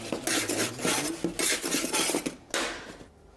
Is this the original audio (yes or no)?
yes